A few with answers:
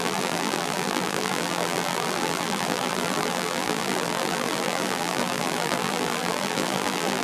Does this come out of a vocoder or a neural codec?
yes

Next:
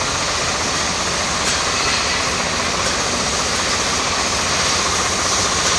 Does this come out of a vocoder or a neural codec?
no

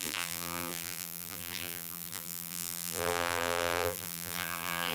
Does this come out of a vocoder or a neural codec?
yes